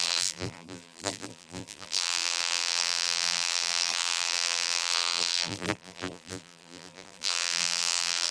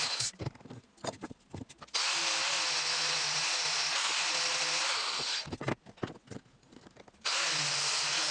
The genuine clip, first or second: second